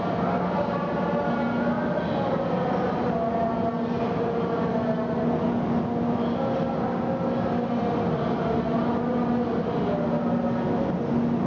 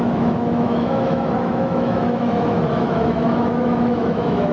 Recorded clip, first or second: first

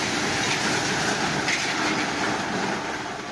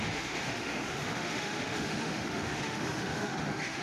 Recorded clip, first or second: first